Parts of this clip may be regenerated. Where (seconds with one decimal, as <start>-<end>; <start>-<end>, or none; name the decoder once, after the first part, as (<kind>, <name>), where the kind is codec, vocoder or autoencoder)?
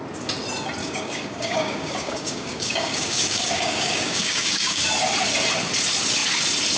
0.8-4.9 (codec, DAC)